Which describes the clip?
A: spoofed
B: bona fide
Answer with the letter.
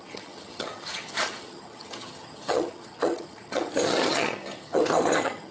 A